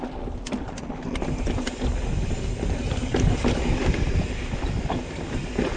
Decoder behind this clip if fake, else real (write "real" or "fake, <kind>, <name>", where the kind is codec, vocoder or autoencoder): real